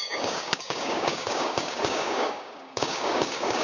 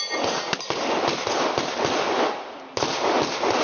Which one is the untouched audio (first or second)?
second